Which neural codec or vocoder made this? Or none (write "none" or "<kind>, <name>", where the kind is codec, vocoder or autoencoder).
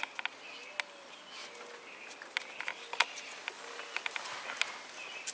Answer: none